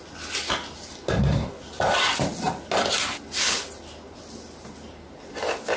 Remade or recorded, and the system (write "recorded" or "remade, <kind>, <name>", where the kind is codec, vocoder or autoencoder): recorded